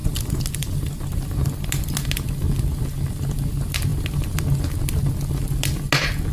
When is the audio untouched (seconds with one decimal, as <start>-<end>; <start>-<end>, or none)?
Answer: 1.5-6.3